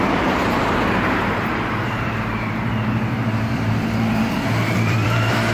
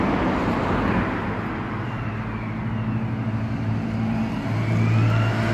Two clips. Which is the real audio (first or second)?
second